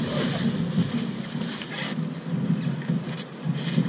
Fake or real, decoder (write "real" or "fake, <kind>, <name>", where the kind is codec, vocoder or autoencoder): real